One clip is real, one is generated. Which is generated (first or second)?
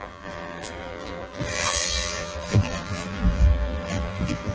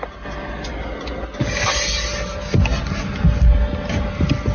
first